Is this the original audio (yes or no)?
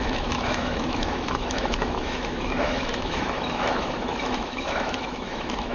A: no